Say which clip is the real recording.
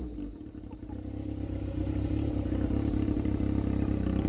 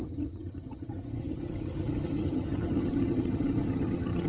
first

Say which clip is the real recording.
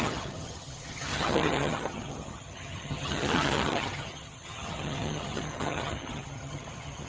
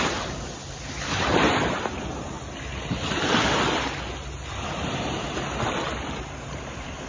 second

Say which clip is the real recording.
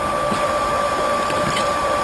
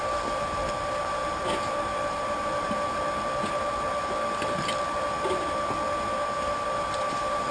second